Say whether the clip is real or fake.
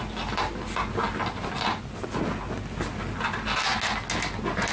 real